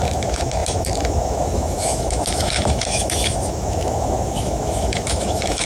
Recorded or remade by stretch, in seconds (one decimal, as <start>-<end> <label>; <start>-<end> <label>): 0.0-5.6 remade